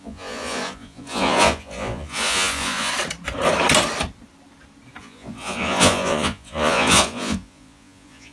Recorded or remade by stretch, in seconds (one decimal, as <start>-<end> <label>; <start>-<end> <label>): 0.0-2.9 remade; 2.9-5.0 recorded; 5.0-8.3 remade